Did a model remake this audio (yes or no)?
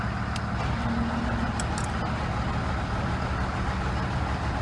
no